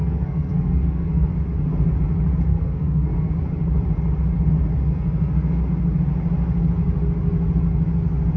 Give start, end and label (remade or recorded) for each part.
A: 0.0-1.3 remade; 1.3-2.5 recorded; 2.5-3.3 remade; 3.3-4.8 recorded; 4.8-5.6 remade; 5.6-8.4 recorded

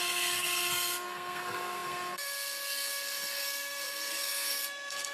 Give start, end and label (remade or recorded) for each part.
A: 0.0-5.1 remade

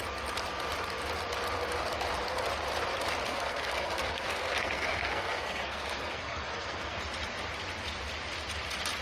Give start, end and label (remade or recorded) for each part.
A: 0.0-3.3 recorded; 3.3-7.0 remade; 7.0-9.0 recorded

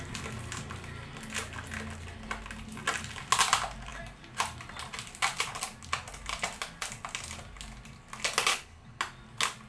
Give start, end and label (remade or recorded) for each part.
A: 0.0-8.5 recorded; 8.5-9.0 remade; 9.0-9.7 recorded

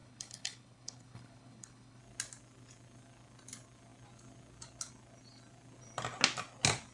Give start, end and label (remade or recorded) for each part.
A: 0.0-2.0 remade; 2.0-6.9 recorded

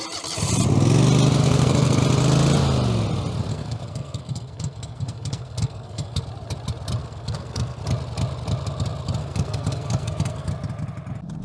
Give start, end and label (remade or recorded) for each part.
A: 0.0-1.4 recorded; 1.4-2.0 remade; 2.0-3.5 recorded; 3.5-6.2 remade; 6.2-7.0 recorded; 7.0-7.8 remade; 7.8-9.2 recorded; 9.2-10.5 remade; 10.5-11.4 recorded